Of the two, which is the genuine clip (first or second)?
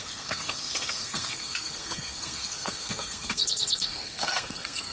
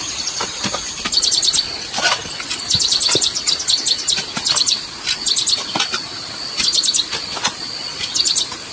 second